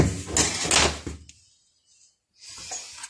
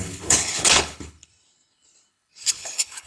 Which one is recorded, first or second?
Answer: first